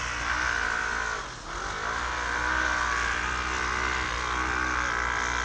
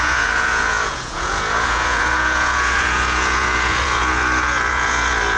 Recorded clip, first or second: first